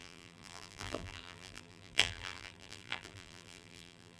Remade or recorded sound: remade